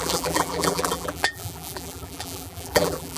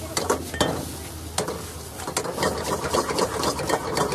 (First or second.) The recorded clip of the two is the second